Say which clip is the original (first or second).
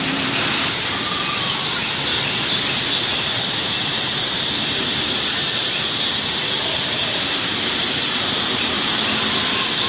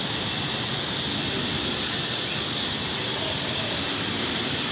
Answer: second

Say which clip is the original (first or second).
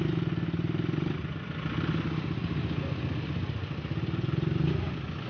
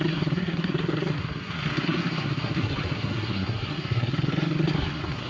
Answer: first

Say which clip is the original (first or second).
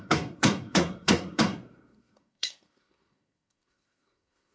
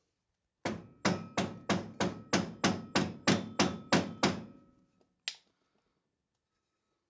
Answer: second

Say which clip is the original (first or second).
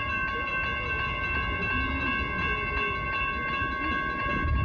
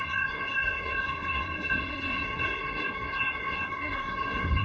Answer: first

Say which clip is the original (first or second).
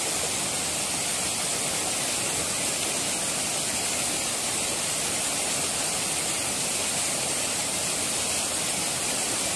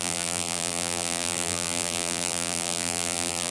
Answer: first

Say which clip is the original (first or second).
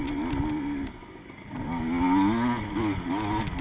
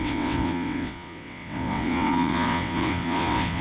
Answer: first